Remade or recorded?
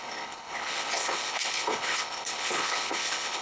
remade